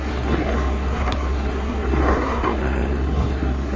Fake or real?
fake